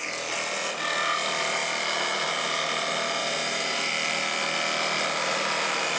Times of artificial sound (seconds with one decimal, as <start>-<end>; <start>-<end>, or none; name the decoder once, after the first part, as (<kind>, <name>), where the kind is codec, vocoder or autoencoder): 3.2-3.9 (vocoder, BigVGAN v2)